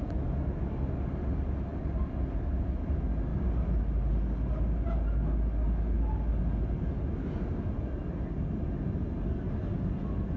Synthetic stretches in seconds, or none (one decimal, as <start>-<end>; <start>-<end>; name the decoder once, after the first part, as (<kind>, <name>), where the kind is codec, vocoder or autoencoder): 1.7-2.2 (vocoder, BigVGAN v2)